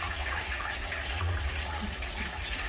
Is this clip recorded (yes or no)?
no